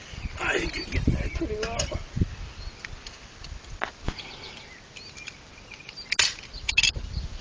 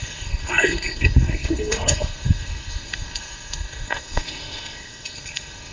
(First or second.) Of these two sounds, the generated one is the second